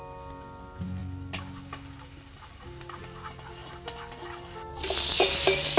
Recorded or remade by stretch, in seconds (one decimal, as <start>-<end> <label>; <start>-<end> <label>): 0.0-5.8 recorded

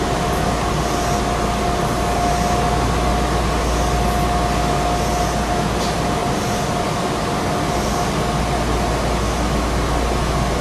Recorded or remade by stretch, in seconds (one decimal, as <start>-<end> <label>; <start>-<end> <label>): 0.0-10.6 recorded

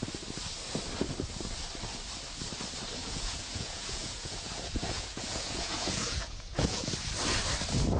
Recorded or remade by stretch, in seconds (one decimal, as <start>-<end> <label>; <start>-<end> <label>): 0.0-3.0 recorded; 3.0-6.9 remade; 6.9-8.0 recorded

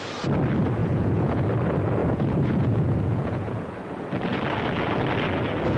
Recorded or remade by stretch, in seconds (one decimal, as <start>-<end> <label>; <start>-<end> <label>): 0.0-0.8 recorded; 0.8-1.4 remade; 1.4-2.0 recorded; 2.0-3.6 remade; 3.6-5.8 recorded